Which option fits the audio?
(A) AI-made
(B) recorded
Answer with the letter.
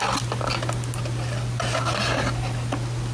B